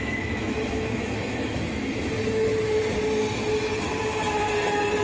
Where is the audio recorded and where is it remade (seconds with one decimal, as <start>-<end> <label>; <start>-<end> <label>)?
0.0-2.5 remade; 2.5-4.0 recorded; 4.0-5.0 remade